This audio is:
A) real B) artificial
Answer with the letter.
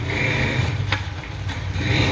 B